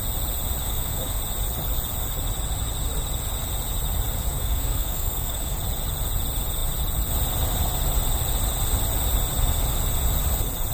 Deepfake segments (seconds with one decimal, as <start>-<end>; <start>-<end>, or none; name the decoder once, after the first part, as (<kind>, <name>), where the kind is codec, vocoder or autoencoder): 0.6-1.2 (codec, DAC); 4.3-5.5